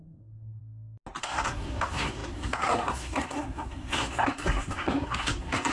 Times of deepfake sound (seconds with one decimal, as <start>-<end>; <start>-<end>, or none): 0.0-0.6; 1.2-5.7